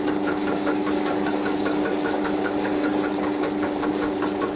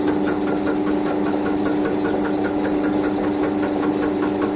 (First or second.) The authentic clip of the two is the second